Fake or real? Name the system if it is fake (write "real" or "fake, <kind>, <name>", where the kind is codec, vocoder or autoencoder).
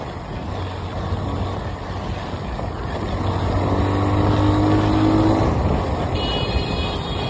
real